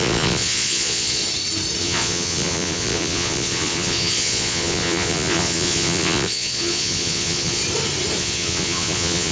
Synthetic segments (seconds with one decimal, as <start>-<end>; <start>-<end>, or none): 0.0-1.2; 1.8-7.6; 8.2-9.3